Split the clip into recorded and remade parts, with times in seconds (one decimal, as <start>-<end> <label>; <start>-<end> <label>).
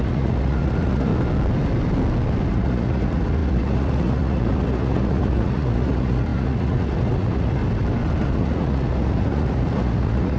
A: 0.0-1.1 remade; 1.1-2.5 recorded; 2.5-7.6 remade; 7.6-8.2 recorded; 8.2-10.4 remade